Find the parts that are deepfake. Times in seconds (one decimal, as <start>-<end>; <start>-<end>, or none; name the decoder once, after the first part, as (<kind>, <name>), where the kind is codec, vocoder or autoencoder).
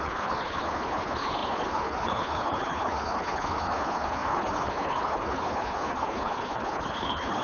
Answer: 0.0-7.4 (codec, HILCodec)